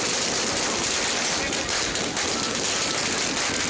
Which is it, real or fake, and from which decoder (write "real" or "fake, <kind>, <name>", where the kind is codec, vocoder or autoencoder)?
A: real